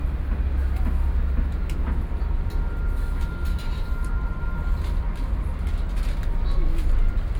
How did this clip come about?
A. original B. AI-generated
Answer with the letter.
A